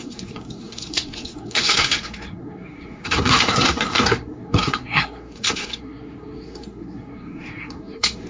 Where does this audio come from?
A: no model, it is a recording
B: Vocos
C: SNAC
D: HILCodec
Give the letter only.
C